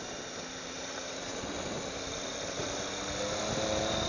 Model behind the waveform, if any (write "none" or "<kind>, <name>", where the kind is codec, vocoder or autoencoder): none